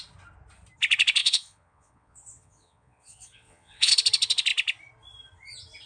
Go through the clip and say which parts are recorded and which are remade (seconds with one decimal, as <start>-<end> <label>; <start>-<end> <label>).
0.0-1.2 recorded; 1.2-3.9 remade; 3.9-5.9 recorded